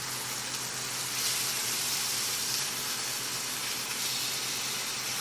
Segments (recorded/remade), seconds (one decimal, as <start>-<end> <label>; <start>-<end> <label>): 0.0-1.6 recorded; 1.6-2.7 remade; 2.7-5.2 recorded